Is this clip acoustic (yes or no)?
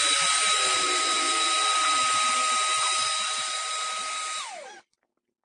yes